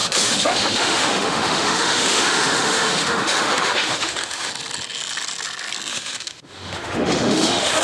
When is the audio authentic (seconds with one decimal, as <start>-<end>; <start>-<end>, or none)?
4.5-5.9